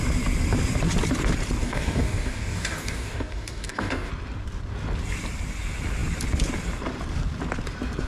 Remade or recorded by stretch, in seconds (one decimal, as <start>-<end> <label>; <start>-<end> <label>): 0.0-1.6 recorded; 1.6-4.1 remade; 4.1-8.1 recorded